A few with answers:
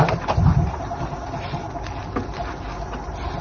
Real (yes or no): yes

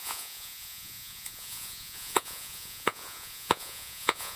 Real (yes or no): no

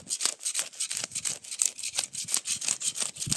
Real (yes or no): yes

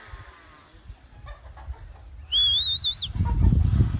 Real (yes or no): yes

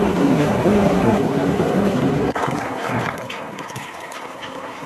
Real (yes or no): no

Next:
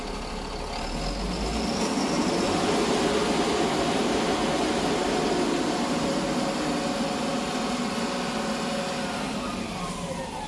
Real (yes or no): yes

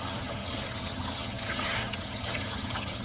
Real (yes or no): no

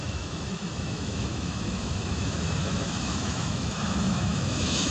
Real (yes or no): no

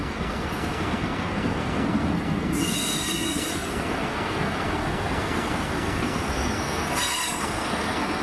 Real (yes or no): no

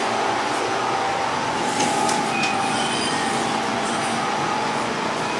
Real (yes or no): no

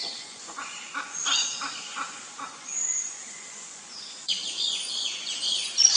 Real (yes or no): no